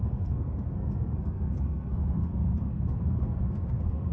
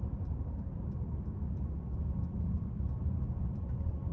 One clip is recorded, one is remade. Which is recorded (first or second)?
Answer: second